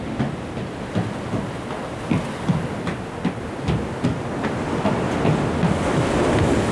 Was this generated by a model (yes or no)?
no